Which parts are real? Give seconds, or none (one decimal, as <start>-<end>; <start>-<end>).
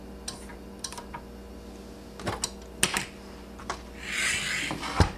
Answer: 0.0-5.2